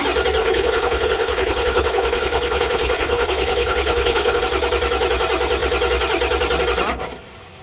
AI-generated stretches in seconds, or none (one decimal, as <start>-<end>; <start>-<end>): 0.4-4.4